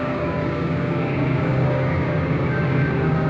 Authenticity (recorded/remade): remade